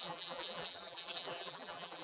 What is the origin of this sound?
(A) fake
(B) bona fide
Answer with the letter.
A